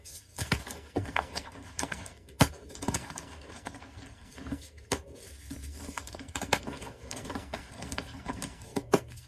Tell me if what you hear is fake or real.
fake